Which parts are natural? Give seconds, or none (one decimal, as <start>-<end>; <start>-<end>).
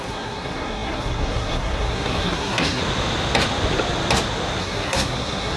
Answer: 2.8-4.6